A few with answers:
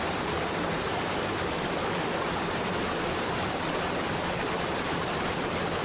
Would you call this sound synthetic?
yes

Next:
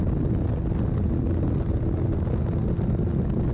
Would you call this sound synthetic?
no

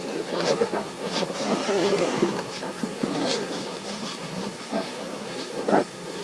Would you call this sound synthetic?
yes